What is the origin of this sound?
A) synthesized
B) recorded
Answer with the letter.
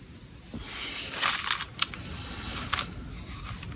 B